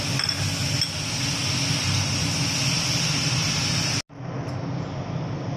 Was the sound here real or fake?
real